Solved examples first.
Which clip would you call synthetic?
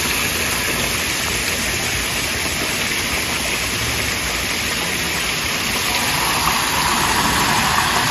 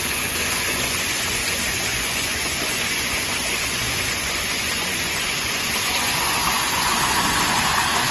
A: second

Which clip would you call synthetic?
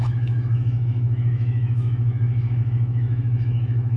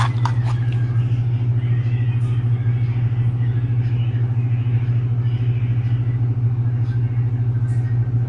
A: first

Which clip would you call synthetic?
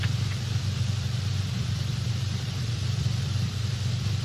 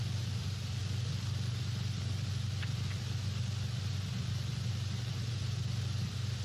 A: first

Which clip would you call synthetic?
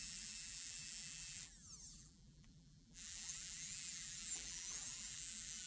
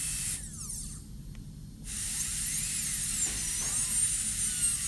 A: first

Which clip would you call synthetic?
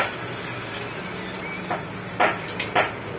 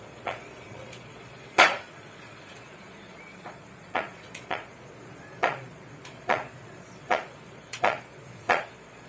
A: second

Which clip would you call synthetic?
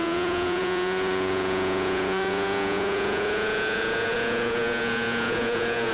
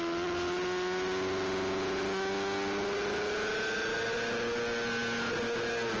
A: first